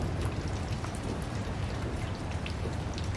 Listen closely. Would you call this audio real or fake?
fake